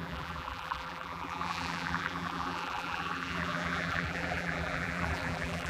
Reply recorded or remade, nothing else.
remade